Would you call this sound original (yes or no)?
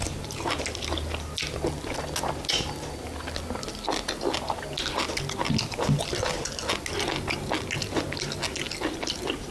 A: yes